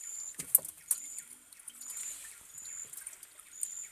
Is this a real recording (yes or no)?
yes